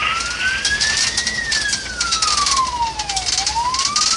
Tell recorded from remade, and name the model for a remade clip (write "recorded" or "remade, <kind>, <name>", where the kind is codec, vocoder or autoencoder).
recorded